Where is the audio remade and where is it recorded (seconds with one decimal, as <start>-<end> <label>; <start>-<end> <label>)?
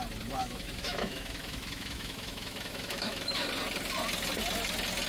0.0-0.4 recorded; 0.4-3.5 remade; 3.5-5.1 recorded